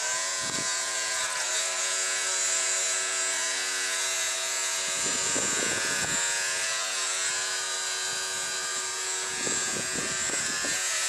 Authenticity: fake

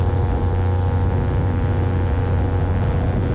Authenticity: real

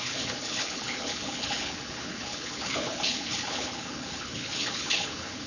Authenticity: fake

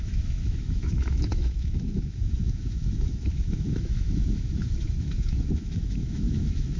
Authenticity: fake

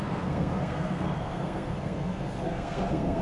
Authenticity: fake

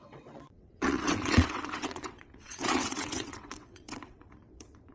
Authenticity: fake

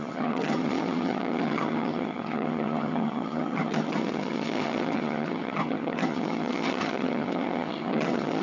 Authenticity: fake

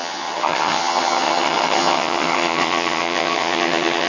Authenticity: fake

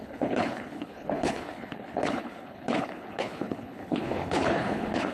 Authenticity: fake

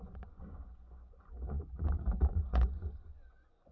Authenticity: fake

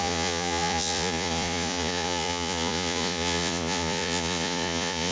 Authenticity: fake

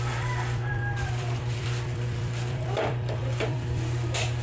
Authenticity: fake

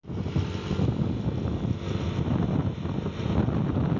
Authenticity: real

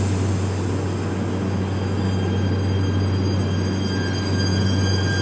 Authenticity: real